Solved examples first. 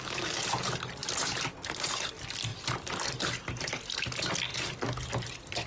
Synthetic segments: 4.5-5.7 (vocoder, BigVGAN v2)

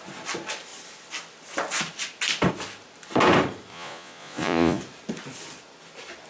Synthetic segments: 3.7-4.8 (vocoder, Vocos)

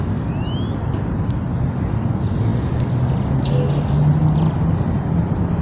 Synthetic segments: none

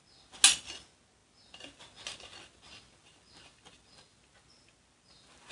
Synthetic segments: none

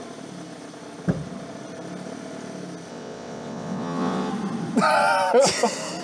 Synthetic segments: 2.9-4.3 (vocoder, WaveNeXt)